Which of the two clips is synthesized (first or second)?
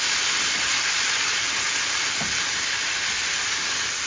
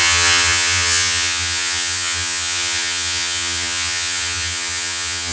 second